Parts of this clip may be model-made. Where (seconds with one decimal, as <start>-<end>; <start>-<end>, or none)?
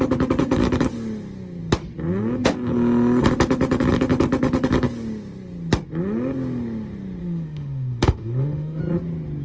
7.2-8.8